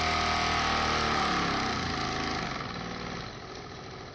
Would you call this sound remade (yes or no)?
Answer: no